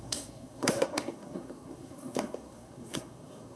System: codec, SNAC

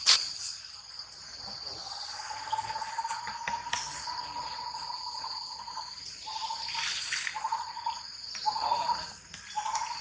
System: none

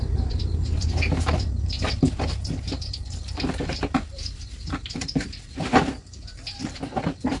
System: vocoder, BigVGAN v2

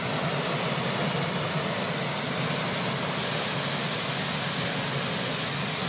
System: none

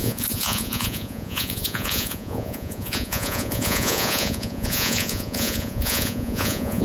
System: vocoder, Vocos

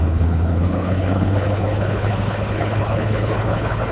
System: codec, HILCodec